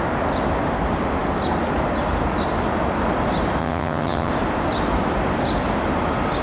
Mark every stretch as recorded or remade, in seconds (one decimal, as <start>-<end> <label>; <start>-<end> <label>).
0.0-3.6 recorded; 3.6-4.3 remade; 4.3-6.4 recorded